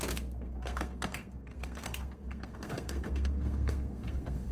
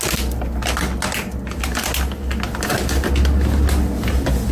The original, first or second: second